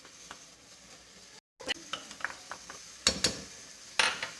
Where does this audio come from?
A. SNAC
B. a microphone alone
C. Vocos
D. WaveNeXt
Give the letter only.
B